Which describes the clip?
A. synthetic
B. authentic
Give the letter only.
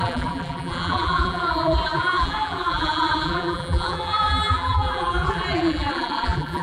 A